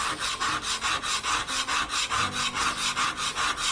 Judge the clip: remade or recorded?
recorded